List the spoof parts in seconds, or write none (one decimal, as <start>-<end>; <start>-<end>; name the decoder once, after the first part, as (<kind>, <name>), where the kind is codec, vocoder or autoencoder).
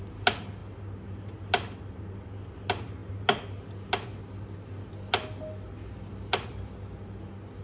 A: none